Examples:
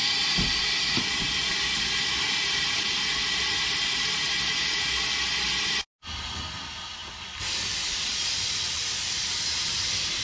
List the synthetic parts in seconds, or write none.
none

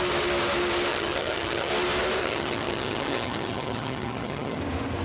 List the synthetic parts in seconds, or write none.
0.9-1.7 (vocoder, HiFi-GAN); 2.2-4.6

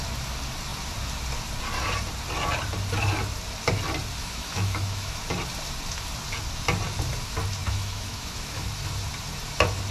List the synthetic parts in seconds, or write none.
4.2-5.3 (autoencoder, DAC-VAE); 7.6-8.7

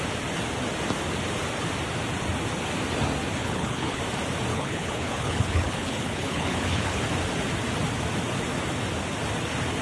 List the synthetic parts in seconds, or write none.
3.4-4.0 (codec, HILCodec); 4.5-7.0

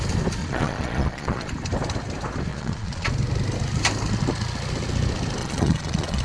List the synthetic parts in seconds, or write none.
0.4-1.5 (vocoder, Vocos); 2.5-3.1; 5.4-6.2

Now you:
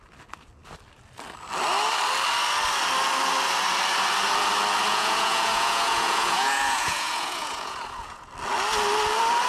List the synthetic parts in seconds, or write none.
4.9-8.3 (vocoder, Vocos)

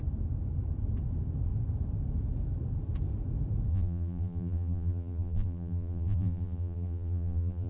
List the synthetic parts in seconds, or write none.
3.7-7.7 (vocoder, BigVGAN v2)